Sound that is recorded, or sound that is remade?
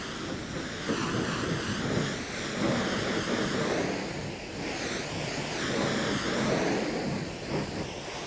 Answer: recorded